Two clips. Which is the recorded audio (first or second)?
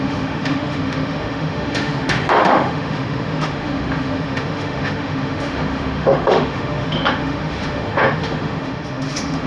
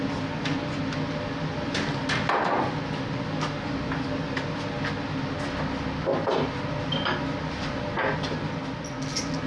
second